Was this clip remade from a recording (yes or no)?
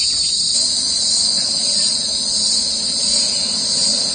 no